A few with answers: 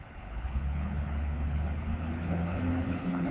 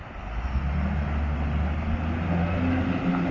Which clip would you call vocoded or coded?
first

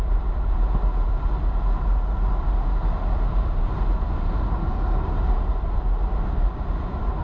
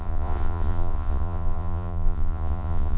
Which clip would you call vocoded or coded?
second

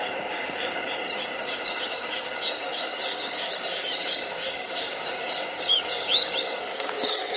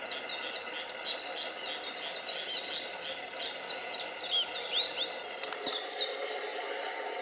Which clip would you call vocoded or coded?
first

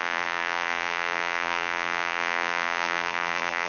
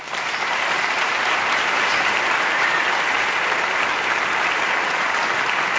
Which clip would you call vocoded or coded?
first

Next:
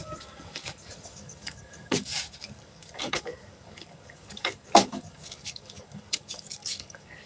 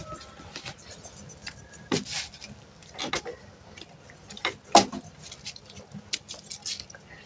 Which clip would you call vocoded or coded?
first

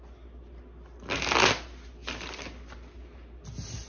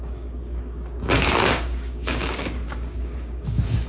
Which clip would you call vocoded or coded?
second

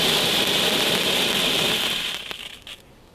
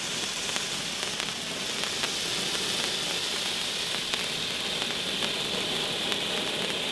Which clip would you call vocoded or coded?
first